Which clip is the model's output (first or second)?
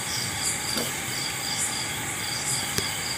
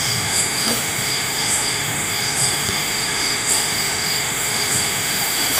second